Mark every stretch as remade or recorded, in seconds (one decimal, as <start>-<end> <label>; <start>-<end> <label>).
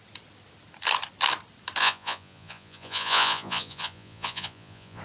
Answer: 0.0-1.8 recorded; 1.8-5.0 remade